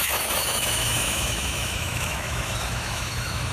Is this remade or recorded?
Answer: remade